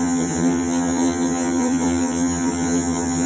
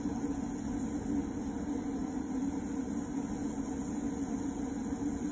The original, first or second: second